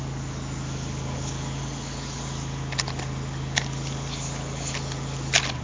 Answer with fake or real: real